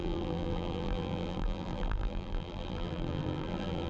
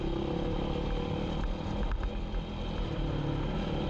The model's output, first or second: first